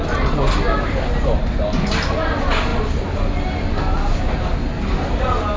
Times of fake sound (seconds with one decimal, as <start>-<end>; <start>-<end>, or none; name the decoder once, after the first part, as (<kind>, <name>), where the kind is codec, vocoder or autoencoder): none